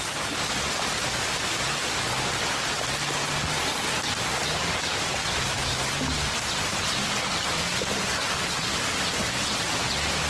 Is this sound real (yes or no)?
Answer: yes